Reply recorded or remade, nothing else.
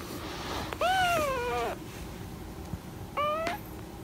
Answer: recorded